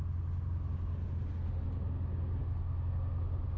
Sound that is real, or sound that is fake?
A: real